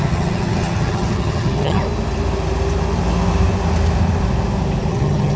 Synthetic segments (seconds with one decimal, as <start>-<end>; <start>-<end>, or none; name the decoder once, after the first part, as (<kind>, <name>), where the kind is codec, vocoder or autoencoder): 0.0-1.8 (vocoder, HiFi-GAN); 4.9-5.4